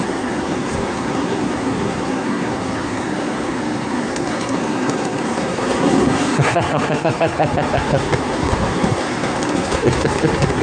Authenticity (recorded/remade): remade